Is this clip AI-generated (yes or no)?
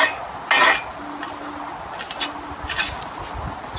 no